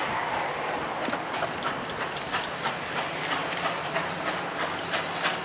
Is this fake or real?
real